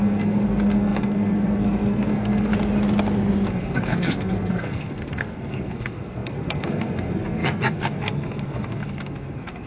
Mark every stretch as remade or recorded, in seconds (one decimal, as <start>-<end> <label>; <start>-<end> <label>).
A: 0.0-2.5 remade; 2.5-3.5 recorded; 3.5-9.7 remade